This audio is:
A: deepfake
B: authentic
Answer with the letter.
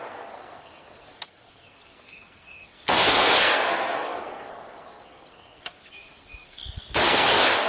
A